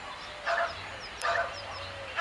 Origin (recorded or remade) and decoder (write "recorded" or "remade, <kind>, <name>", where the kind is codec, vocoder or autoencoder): recorded